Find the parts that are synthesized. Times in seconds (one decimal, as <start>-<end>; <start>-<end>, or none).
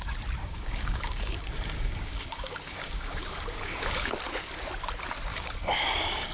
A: 0.4-4.2; 5.3-6.3